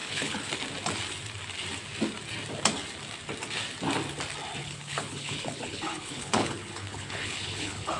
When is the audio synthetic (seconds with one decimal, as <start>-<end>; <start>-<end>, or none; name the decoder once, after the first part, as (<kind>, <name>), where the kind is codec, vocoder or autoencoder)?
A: 0.0-0.5 (codec, HILCodec); 4.6-8.0